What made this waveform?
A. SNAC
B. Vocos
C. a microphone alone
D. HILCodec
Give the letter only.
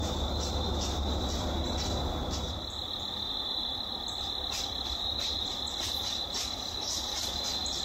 C